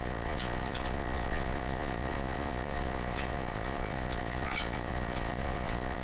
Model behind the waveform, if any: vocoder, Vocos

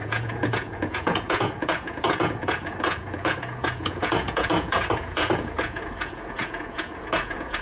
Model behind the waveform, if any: vocoder, Vocos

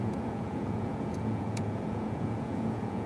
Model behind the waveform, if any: vocoder, Vocos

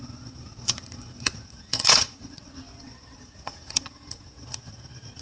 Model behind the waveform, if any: vocoder, Vocos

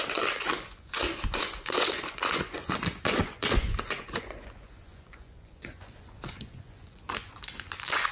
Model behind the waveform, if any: vocoder, Vocos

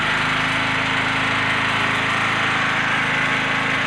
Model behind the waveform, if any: none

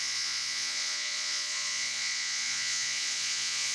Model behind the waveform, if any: vocoder, Vocos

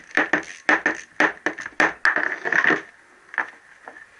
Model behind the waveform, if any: none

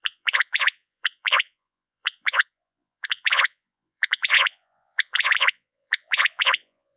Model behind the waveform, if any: vocoder, Vocos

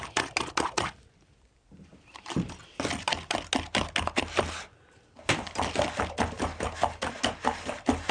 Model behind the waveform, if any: none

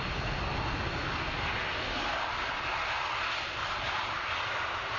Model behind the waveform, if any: none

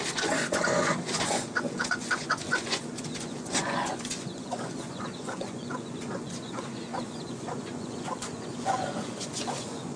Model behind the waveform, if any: vocoder, Vocos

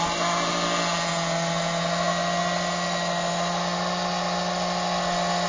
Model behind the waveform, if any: none